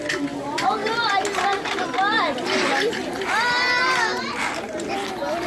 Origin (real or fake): real